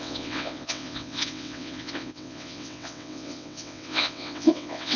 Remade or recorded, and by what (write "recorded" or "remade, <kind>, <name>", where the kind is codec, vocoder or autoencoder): remade, vocoder, WaveNeXt